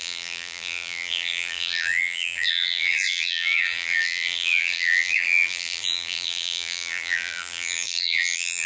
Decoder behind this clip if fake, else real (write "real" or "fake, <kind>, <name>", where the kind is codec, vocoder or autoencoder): fake, vocoder, BigVGAN v2